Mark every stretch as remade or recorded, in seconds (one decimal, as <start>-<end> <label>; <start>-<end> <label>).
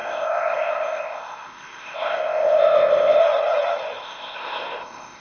0.0-3.2 remade; 3.2-4.0 recorded; 4.0-5.2 remade